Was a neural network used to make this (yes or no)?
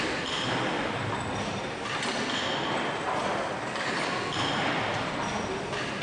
no